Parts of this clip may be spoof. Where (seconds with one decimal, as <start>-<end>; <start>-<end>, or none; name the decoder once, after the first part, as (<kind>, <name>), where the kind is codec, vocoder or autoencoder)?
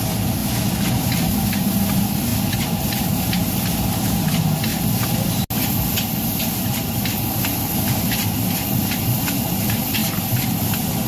none